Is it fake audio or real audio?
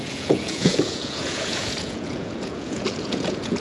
fake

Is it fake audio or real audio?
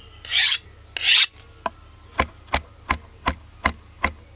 real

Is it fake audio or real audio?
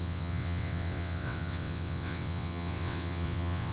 fake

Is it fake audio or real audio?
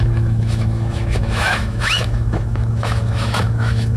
fake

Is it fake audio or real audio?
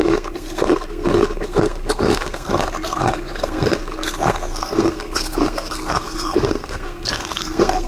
fake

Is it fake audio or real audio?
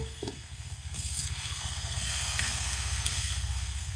fake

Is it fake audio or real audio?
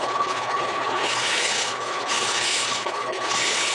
fake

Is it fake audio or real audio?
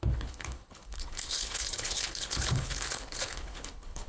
fake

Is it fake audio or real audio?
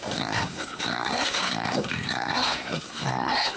fake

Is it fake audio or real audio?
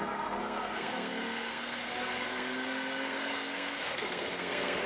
fake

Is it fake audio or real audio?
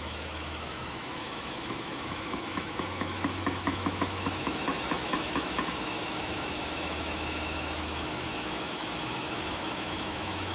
fake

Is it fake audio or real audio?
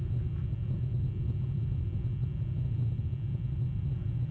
real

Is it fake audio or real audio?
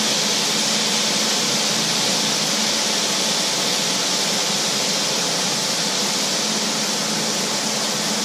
real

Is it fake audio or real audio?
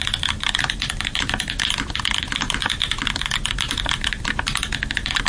real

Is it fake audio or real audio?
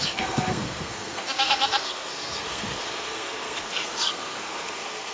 fake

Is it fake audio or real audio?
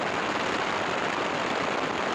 real